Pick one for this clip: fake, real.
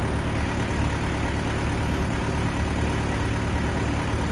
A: real